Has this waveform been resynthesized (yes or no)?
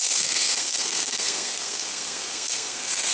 yes